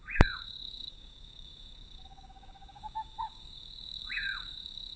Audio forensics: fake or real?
fake